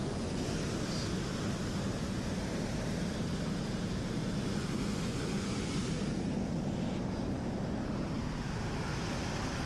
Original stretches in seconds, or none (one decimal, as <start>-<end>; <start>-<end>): 0.5-4.2; 5.8-9.7